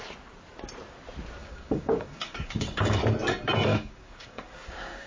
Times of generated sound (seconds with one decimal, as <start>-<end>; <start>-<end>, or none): 1.4-3.0; 3.7-5.1